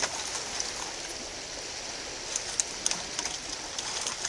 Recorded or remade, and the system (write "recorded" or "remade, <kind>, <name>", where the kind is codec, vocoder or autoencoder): recorded